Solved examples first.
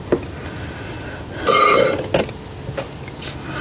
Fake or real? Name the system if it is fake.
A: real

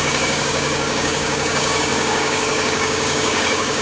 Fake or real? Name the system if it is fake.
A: fake, codec, DAC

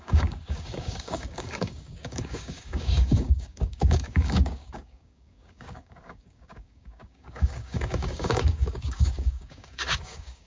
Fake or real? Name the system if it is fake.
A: fake, codec, DAC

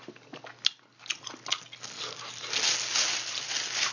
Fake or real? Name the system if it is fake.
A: real